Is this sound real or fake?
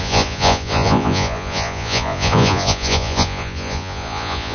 fake